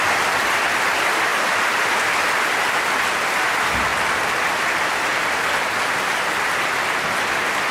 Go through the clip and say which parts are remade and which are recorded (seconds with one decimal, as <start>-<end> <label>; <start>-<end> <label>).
0.0-7.7 recorded